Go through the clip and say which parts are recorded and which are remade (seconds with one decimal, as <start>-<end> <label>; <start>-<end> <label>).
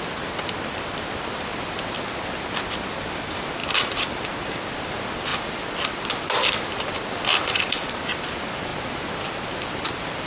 0.0-1.5 remade; 1.5-2.7 recorded; 2.7-5.3 remade; 5.3-6.9 recorded; 6.9-10.3 remade